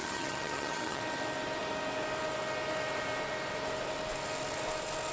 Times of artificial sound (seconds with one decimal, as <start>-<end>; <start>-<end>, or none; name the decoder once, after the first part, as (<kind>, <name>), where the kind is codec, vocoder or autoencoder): 0.0-1.0 (vocoder, HiFi-GAN)